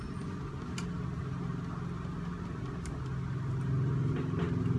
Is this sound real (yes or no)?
yes